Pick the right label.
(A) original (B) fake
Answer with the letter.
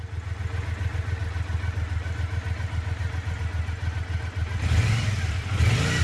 A